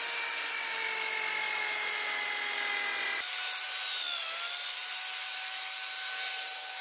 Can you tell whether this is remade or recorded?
recorded